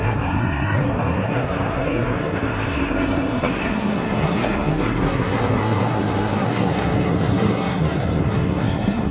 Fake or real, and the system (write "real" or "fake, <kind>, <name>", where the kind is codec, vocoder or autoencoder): fake, codec, SNAC